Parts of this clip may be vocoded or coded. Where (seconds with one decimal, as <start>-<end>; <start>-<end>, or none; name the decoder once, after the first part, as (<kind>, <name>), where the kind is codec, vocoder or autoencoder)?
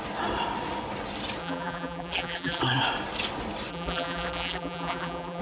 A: 1.4-2.6 (vocoder, BigVGAN v2); 3.7-5.4